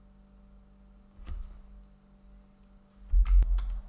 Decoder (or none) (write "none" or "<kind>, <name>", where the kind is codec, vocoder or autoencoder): none